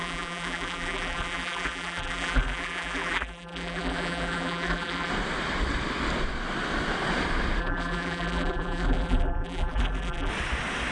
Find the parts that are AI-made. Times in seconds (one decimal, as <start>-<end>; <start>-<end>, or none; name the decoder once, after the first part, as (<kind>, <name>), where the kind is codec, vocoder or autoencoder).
0.0-5.1 (vocoder, BigVGAN v2); 7.6-10.3